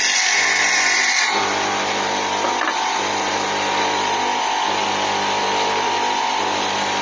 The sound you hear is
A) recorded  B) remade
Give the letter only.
A